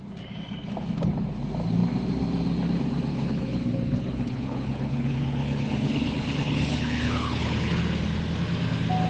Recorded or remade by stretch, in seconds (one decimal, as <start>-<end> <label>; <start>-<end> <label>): 0.0-3.1 recorded; 3.1-7.8 remade; 7.8-9.1 recorded